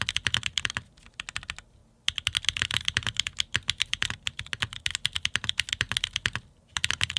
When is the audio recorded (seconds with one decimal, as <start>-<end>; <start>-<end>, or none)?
0.0-7.2